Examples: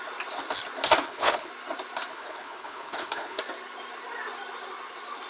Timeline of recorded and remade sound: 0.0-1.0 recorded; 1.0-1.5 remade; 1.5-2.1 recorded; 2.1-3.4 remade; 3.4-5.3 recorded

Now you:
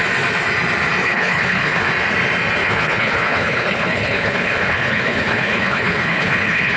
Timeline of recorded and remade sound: 0.0-1.0 recorded; 1.0-1.9 remade; 1.9-2.6 recorded; 2.6-6.8 remade

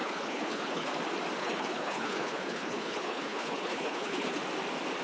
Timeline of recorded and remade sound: 0.0-0.9 remade; 0.9-1.4 recorded; 1.4-4.4 remade; 4.4-5.0 recorded

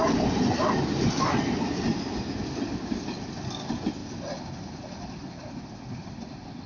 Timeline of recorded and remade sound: 0.0-6.7 recorded

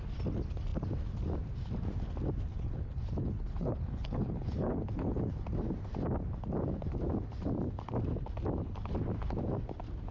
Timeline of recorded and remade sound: 0.0-2.5 recorded; 2.5-5.3 remade; 5.3-10.1 recorded

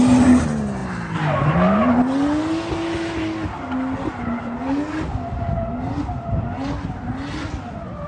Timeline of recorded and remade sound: 0.0-8.1 recorded

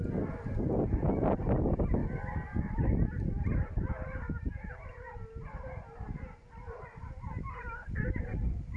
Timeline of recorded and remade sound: 0.0-8.8 recorded

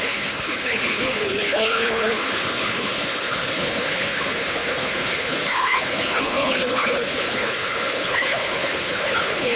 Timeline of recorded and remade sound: 0.0-9.6 remade